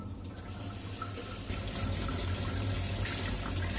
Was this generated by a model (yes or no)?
no